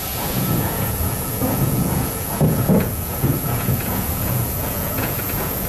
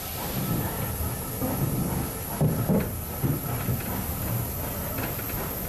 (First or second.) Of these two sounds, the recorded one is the second